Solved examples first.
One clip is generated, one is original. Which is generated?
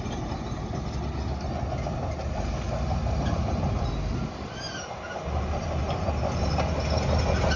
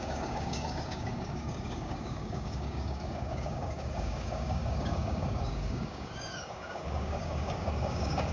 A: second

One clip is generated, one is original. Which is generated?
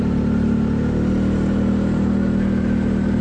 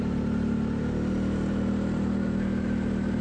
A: second